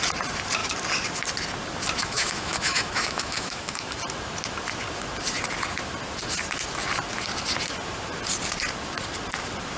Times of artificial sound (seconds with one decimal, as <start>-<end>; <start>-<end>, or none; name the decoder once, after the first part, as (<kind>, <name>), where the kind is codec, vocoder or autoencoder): 2.0-3.9 (autoencoder, DAC-VAE)